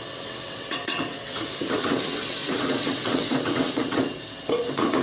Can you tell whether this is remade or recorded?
remade